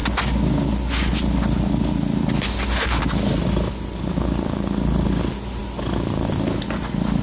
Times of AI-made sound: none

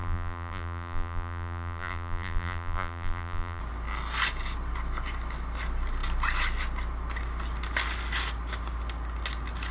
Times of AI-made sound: 0.0-3.6 (vocoder, BigVGAN v2)

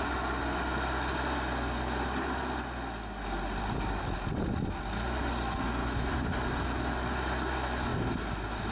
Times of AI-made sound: none

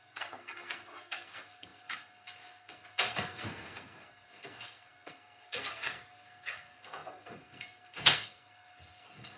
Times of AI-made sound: 0.0-9.4 (codec, SNAC)

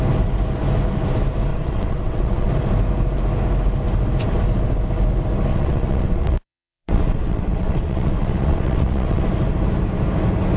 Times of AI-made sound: 1.5-2.5 (vocoder, WaveNeXt); 5.5-9.2